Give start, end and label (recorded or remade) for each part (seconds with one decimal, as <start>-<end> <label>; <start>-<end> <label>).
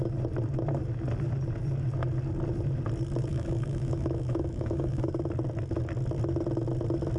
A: 0.0-3.3 recorded; 3.3-5.1 remade; 5.1-7.2 recorded